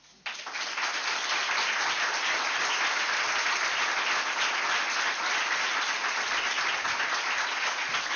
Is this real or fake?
real